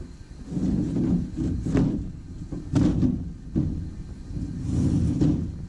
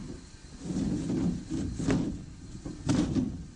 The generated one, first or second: second